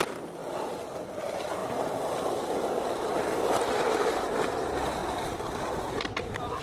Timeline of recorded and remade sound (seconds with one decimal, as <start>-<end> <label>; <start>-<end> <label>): 0.0-6.6 recorded